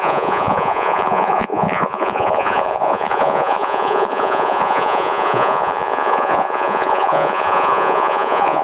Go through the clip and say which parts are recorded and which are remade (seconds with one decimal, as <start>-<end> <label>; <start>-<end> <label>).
0.0-8.6 remade